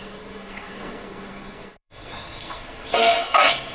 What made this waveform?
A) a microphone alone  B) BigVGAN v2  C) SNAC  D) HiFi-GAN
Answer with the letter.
C